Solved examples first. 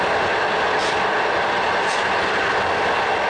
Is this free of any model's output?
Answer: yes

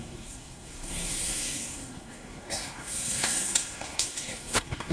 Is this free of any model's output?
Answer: no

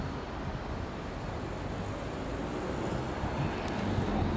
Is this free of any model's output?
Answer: yes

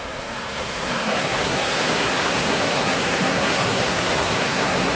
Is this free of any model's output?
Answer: no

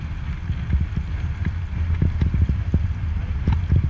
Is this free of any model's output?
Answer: yes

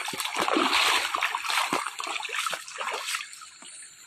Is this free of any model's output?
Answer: yes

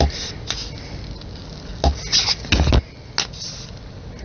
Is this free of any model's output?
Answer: yes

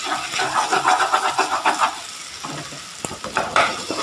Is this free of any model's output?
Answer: yes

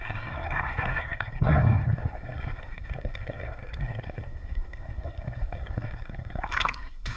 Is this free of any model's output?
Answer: no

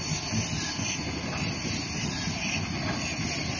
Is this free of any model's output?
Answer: yes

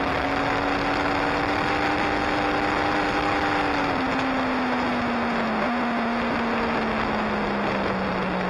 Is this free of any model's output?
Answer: yes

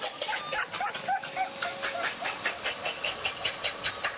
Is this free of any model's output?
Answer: yes